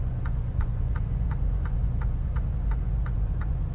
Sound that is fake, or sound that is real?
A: fake